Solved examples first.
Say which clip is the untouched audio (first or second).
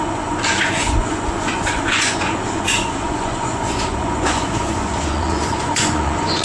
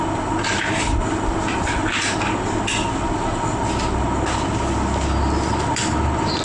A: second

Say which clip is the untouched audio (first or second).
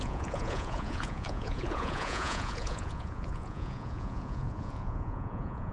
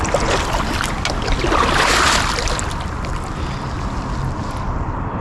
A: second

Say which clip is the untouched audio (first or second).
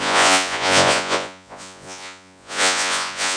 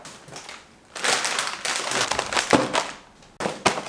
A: second